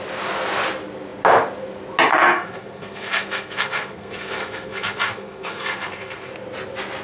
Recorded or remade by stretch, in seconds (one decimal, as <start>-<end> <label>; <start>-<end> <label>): 0.0-2.1 recorded; 2.1-6.3 remade; 6.3-7.0 recorded